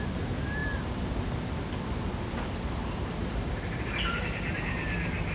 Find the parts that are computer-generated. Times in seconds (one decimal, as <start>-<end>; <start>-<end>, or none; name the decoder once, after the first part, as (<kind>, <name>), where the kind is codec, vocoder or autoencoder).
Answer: none